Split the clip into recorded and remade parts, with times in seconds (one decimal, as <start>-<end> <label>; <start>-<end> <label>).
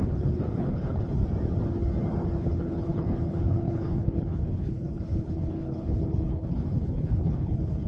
0.0-1.2 remade; 1.2-2.4 recorded; 2.4-7.9 remade